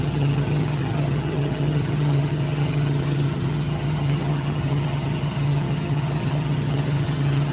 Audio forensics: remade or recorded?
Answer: remade